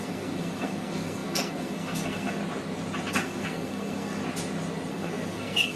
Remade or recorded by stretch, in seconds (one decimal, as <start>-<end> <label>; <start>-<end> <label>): 0.0-2.4 remade; 2.4-3.1 recorded; 3.1-4.2 remade; 4.2-4.9 recorded; 4.9-5.8 remade